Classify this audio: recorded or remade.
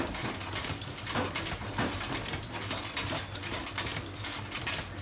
recorded